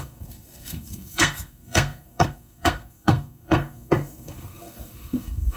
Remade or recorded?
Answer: remade